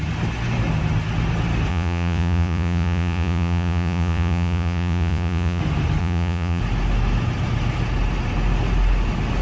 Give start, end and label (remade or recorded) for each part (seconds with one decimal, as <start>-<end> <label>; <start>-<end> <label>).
0.0-1.7 recorded; 1.7-5.6 remade; 5.6-6.0 recorded; 6.0-6.6 remade; 6.6-9.4 recorded